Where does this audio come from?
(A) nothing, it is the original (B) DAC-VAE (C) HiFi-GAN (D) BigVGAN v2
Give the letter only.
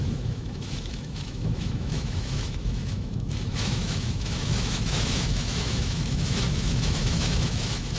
B